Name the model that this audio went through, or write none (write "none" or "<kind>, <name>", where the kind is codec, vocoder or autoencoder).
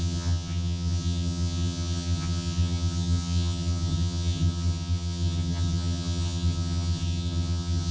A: vocoder, HiFi-GAN